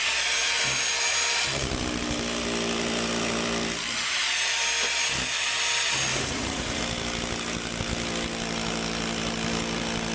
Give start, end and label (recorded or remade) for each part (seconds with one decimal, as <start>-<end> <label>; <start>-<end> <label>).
0.0-6.1 recorded; 6.1-6.8 remade; 6.8-10.1 recorded